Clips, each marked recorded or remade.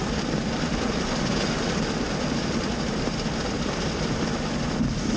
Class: remade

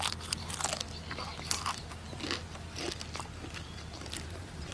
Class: recorded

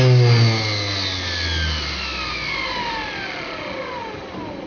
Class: recorded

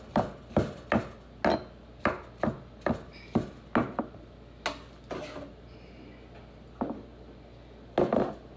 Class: recorded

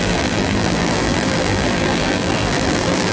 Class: remade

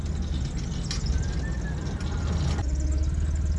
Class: recorded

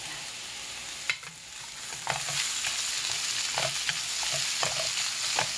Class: recorded